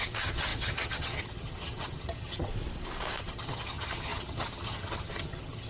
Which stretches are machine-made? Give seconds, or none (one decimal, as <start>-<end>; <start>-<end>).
0.0-2.5; 3.2-5.7